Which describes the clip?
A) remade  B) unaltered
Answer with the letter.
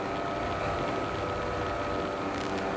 B